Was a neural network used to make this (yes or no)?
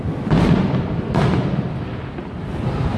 no